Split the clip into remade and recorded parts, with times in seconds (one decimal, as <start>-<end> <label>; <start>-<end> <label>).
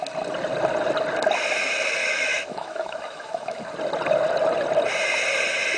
0.0-2.0 recorded; 2.0-3.6 remade; 3.6-5.8 recorded